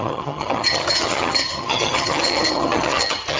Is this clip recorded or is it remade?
remade